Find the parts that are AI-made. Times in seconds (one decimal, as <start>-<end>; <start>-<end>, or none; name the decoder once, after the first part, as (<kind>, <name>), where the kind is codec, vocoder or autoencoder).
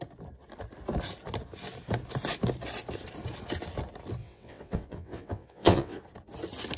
4.2-6.0 (vocoder, WaveNeXt)